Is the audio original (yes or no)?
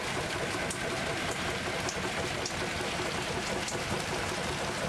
yes